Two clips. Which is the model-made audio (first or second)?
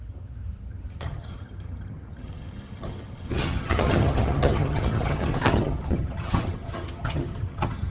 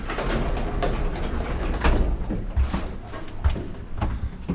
first